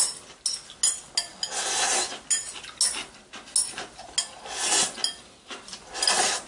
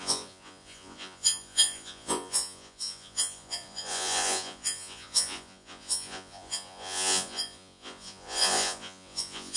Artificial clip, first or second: second